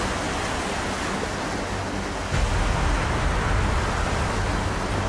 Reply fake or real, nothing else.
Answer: real